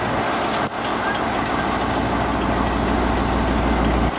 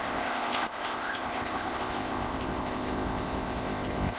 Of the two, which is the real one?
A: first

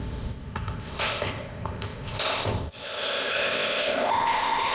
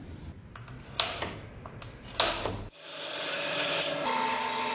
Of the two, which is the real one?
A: second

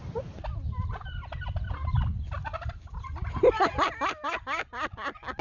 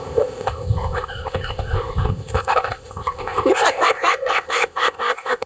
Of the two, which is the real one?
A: first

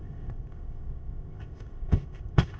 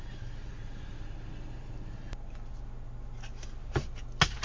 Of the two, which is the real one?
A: second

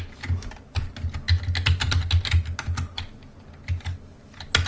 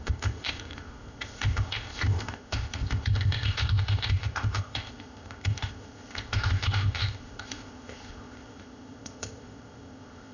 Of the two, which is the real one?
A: first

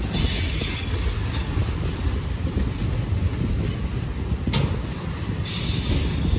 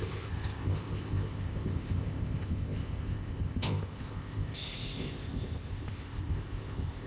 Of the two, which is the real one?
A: first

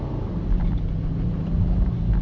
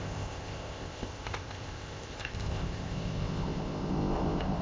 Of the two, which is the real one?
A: first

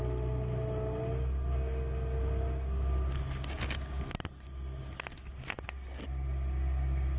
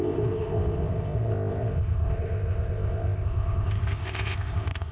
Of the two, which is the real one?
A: first